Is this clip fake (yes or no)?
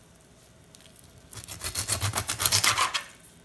no